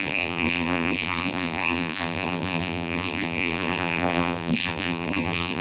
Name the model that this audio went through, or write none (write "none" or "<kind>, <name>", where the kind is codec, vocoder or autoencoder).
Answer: vocoder, BigVGAN v2